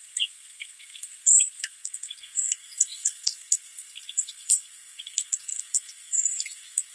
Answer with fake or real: fake